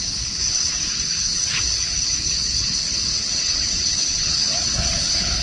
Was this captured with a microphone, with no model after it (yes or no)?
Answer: no